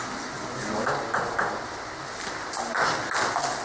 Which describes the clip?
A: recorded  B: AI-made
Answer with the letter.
A